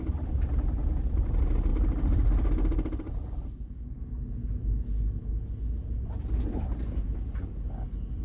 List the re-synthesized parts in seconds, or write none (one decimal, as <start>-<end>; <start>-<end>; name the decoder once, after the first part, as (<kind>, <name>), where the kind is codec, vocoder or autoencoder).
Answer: 1.7-4.0 (vocoder, BigVGAN v2)